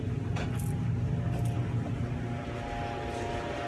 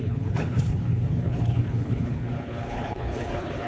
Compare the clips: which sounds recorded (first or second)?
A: first